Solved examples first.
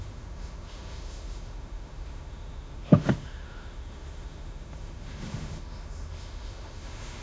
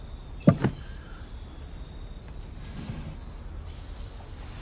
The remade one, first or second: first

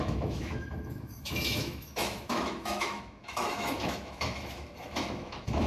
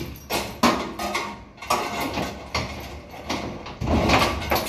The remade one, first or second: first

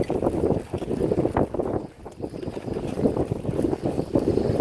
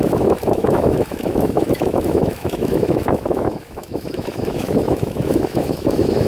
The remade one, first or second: second